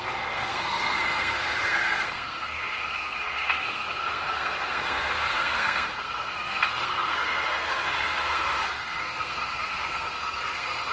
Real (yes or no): no